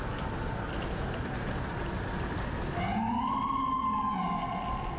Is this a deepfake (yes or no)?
no